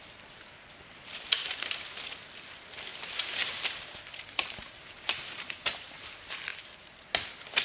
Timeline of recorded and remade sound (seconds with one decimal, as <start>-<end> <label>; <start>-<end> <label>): 0.0-2.9 recorded; 2.9-6.1 remade; 6.1-7.6 recorded